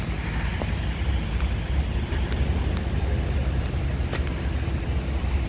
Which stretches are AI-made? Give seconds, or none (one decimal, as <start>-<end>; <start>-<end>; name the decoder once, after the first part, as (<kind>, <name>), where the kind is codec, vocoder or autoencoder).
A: 3.4-4.4 (vocoder, BigVGAN v2)

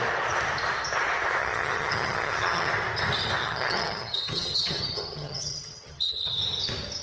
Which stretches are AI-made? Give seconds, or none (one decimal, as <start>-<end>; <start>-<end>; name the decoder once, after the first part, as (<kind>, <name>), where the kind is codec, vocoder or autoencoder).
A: 1.4-2.7 (vocoder, HiFi-GAN); 3.4-6.4

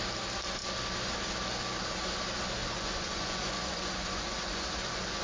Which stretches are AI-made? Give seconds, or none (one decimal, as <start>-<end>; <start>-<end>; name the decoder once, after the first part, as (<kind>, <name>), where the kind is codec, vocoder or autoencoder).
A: 2.6-5.2 (vocoder, Vocos)

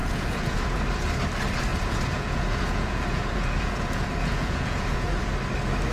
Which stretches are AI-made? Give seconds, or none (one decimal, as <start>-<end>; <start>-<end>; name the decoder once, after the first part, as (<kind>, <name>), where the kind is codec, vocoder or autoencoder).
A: 0.0-0.8 (vocoder, Vocos); 1.7-5.2